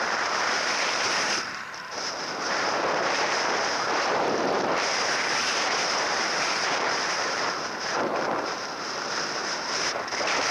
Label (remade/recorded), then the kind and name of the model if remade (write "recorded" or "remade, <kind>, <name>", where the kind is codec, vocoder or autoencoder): remade, vocoder, BigVGAN v2